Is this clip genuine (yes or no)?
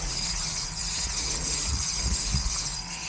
no